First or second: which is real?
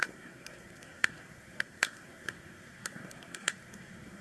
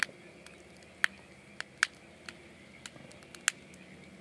second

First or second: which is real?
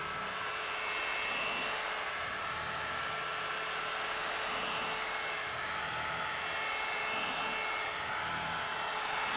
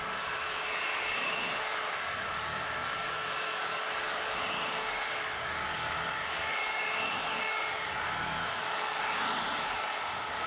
first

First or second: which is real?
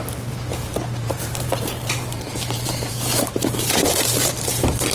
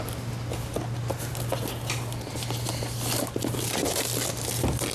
second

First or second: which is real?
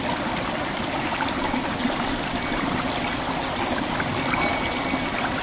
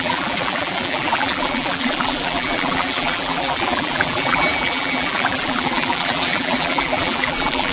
first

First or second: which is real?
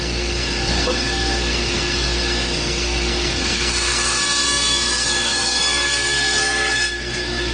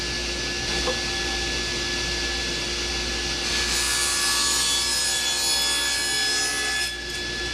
second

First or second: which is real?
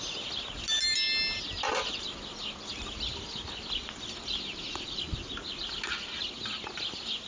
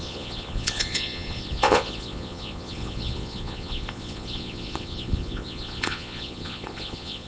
first